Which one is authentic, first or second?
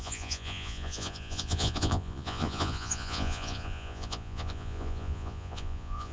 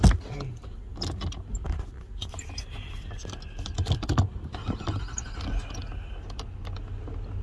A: second